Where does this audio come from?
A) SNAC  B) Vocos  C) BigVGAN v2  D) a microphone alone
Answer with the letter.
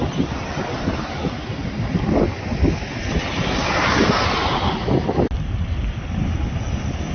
D